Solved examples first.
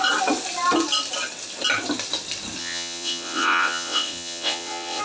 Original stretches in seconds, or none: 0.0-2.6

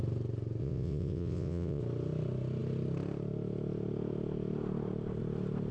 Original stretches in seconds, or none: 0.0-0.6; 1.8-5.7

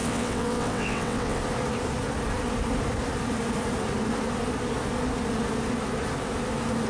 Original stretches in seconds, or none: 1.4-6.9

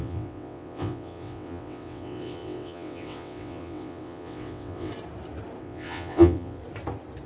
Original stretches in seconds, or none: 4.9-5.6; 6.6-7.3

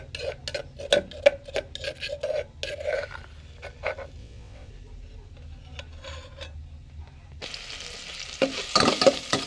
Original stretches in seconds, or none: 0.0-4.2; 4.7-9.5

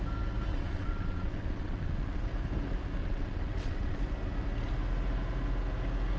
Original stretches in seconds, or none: 0.0-0.5; 2.2-3.0; 4.0-6.2